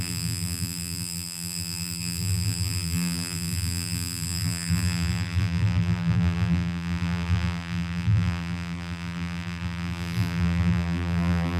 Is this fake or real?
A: fake